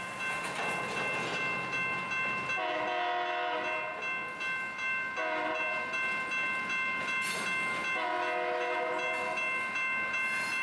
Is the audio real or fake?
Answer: real